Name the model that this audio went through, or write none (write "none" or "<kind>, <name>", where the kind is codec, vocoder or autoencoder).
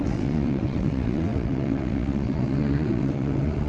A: vocoder, WaveNeXt